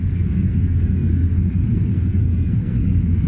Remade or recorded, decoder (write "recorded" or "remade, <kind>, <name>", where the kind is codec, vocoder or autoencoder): remade, codec, SNAC